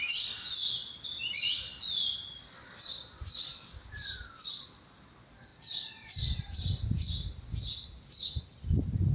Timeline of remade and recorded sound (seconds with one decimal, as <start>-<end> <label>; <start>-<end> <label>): 0.0-9.1 recorded

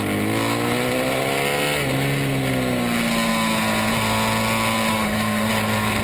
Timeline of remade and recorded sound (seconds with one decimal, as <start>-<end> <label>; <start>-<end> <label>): 0.0-4.9 recorded; 4.9-5.5 remade; 5.5-6.0 recorded

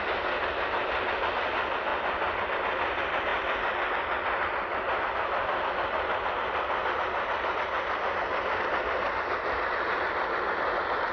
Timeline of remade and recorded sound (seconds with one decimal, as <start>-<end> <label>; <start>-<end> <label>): 0.0-11.1 recorded